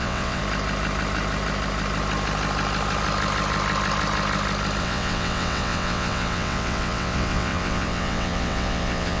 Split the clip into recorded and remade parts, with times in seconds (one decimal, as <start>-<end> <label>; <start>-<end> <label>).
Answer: 0.0-0.4 remade; 0.4-4.8 recorded; 4.8-9.2 remade